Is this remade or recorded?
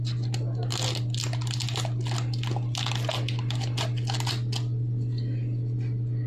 recorded